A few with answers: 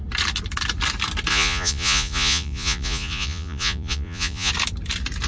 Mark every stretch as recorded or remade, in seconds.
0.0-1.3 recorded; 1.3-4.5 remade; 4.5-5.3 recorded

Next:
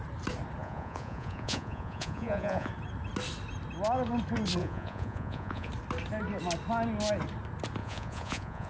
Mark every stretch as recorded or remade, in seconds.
0.0-0.6 recorded; 0.6-2.7 remade; 2.7-4.6 recorded; 4.6-5.7 remade; 5.7-7.8 recorded; 7.8-8.7 remade

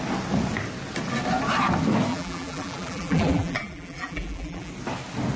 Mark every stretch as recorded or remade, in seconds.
0.0-2.1 recorded; 2.1-4.7 remade; 4.7-5.4 recorded

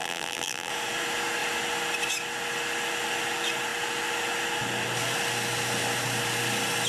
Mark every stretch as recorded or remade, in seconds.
0.0-0.7 remade; 0.7-6.9 recorded

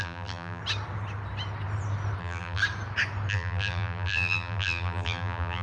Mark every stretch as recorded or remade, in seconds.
0.0-0.6 remade; 0.6-2.2 recorded; 2.2-2.6 remade; 2.6-3.3 recorded; 3.3-5.6 remade

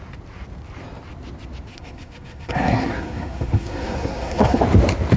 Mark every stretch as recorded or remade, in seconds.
0.0-1.7 recorded; 1.7-4.6 remade; 4.6-5.2 recorded

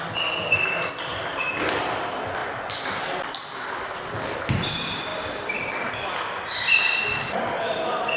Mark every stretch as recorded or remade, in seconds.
0.0-5.1 recorded; 5.1-5.9 remade; 5.9-8.2 recorded

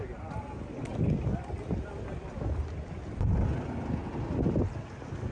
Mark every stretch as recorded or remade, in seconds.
0.0-5.3 recorded